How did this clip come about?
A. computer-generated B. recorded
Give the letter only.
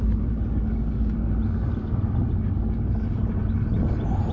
B